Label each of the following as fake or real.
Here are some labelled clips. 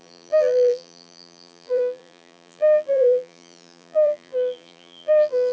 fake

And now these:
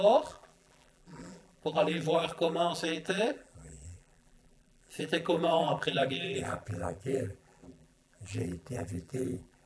fake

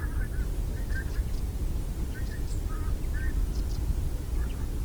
fake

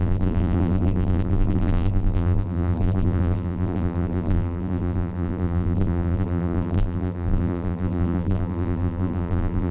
fake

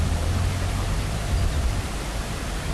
fake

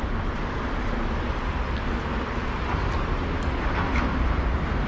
real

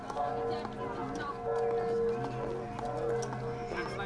real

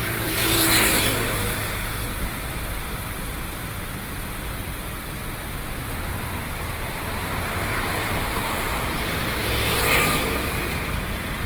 fake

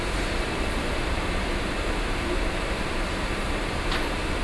fake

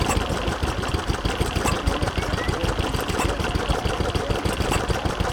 real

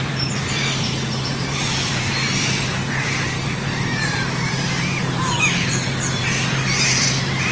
fake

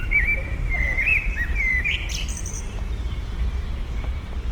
fake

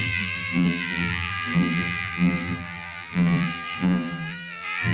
fake